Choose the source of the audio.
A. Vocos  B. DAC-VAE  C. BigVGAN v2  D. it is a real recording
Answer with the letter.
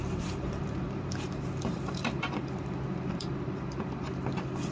C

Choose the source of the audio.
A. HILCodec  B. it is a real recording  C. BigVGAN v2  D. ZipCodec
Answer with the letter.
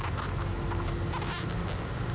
B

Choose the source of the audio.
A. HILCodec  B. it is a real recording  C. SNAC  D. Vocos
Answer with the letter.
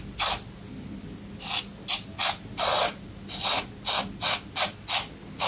B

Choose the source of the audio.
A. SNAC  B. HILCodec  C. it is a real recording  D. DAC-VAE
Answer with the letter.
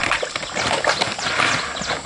C